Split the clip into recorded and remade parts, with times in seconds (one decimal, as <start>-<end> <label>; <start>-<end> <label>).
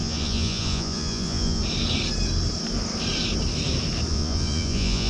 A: 0.0-1.6 remade; 1.6-4.1 recorded; 4.1-5.1 remade